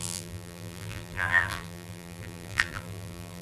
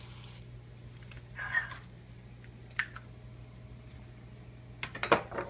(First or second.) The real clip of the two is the second